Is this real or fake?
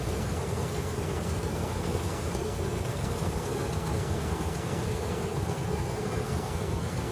fake